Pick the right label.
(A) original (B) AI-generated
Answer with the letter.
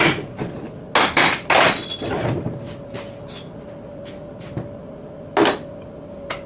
A